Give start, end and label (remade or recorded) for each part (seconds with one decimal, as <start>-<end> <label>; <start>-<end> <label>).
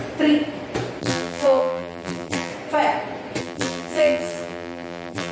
0.0-1.0 recorded; 1.0-2.5 remade; 2.5-3.4 recorded; 3.4-5.3 remade